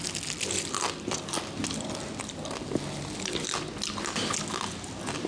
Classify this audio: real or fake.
real